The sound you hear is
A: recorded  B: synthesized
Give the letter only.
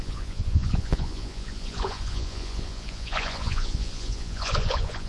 B